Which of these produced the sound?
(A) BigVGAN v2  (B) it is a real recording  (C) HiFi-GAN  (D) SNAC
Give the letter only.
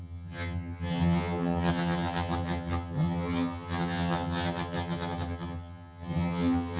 C